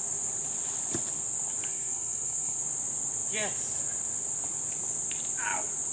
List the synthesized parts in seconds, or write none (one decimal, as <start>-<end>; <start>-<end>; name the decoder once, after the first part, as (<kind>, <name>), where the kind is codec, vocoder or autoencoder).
1.7-2.6 (codec, SNAC)